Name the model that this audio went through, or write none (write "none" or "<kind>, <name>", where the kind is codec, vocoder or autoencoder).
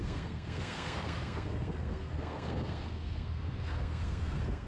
codec, SNAC